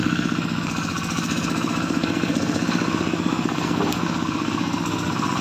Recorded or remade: remade